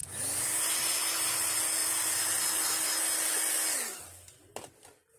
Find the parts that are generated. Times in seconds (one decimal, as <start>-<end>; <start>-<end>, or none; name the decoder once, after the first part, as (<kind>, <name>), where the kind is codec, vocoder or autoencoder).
none